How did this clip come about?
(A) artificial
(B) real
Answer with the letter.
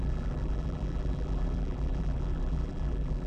A